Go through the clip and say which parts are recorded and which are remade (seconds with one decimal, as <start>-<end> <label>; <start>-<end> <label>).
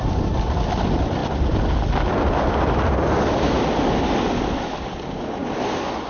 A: 0.0-6.1 recorded